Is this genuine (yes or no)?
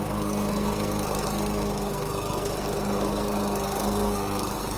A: no